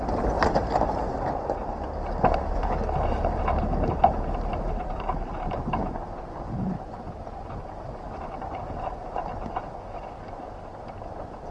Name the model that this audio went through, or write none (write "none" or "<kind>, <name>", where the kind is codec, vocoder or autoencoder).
none